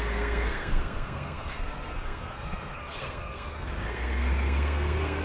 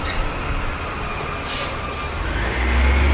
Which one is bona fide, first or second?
second